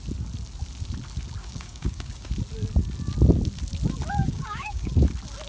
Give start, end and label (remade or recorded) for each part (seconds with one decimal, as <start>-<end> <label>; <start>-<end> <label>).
0.0-1.4 recorded; 1.4-2.3 remade; 2.3-4.1 recorded; 4.1-4.9 remade; 4.9-5.5 recorded